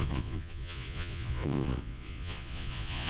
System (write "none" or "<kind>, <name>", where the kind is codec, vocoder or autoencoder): vocoder, Vocos